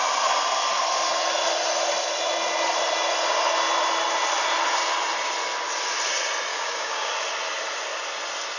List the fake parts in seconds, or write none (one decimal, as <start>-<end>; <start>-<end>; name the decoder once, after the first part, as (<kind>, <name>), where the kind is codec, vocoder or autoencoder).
6.5-7.1 (codec, DAC)